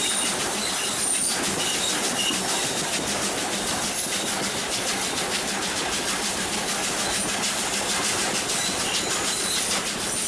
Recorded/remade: recorded